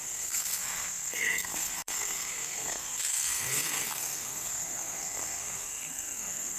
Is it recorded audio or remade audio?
remade